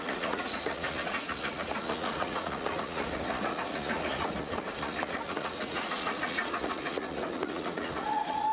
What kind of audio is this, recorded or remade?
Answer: remade